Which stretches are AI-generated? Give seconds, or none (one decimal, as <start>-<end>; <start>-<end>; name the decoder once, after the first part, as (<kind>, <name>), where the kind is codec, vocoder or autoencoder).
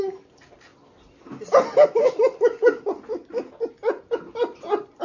none